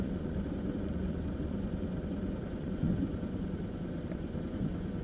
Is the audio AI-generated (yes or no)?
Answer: yes